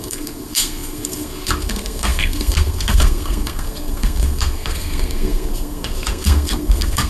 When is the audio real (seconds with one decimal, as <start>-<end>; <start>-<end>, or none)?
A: none

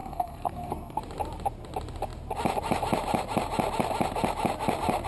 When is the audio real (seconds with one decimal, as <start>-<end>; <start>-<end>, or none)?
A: 1.0-5.1

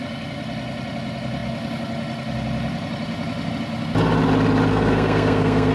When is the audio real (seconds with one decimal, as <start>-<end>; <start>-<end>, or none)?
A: 0.0-4.7

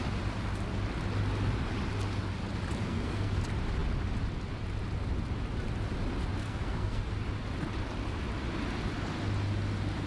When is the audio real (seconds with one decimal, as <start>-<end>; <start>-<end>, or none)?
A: 0.0-2.8; 3.4-6.4; 7.1-10.1

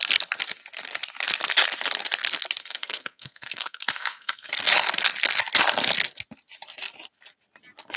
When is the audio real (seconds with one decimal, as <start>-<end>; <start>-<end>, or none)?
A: 0.0-2.6; 4.5-8.0

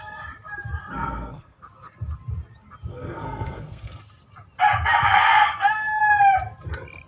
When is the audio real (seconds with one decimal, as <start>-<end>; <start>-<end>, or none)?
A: 0.0-0.8; 1.6-2.9; 4.0-5.0; 6.0-7.1

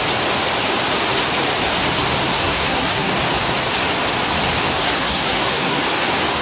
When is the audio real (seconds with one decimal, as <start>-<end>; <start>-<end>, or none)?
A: 0.0-2.3; 3.1-4.8; 5.8-6.4

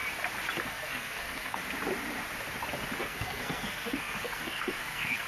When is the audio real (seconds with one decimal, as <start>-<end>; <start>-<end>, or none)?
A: 0.0-0.6; 1.6-3.0